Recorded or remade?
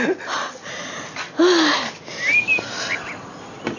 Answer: recorded